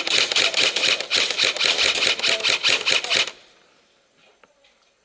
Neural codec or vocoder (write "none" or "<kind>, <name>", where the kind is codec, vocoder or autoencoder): none